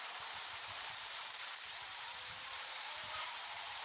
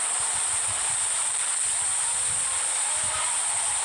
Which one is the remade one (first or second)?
first